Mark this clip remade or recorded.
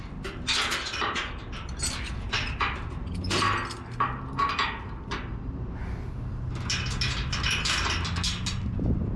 recorded